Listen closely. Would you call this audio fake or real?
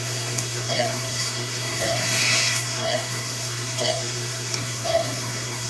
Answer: fake